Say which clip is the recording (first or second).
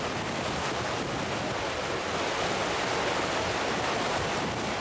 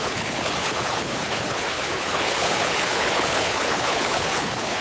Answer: first